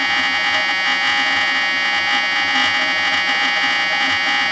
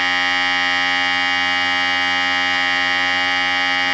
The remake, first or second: first